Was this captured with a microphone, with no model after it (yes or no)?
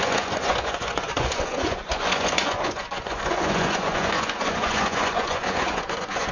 no